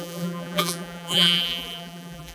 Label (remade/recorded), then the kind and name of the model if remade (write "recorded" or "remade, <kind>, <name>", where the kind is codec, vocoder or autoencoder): remade, vocoder, BigVGAN v2